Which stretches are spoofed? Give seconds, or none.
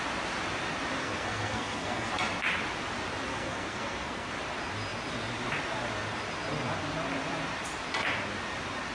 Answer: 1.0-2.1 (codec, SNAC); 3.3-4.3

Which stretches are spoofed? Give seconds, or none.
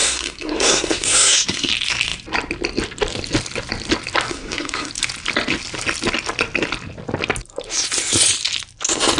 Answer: 0.0-1.7 (codec, SNAC); 4.3-4.9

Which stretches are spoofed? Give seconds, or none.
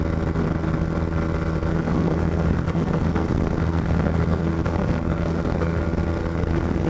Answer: 1.7-5.8 (codec, SNAC); 6.2-6.9